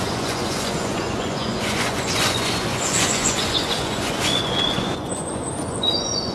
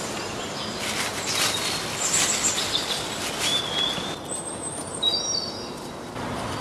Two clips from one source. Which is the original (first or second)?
second